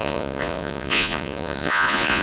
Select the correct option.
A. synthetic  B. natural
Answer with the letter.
A